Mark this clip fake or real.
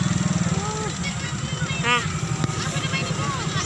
real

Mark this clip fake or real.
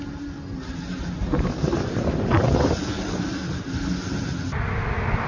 real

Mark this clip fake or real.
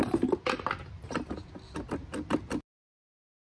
real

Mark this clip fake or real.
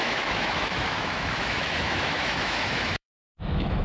fake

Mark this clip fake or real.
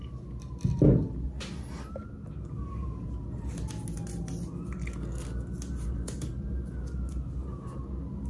real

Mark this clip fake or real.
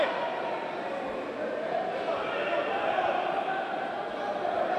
real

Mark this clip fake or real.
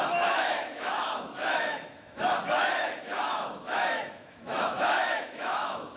fake